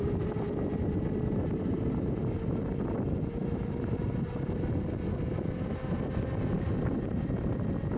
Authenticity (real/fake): real